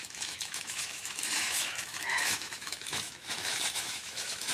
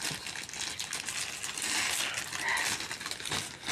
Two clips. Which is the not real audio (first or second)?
first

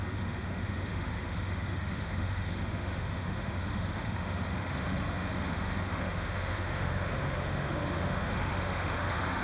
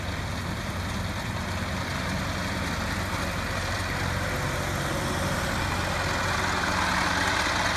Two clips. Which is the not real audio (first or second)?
first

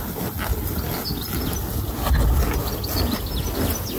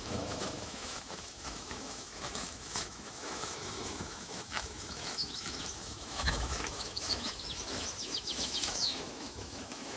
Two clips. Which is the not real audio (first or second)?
second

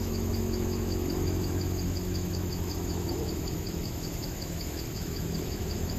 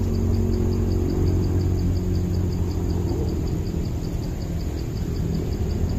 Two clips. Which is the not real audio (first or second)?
first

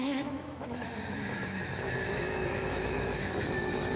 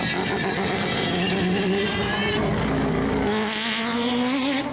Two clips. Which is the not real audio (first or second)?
first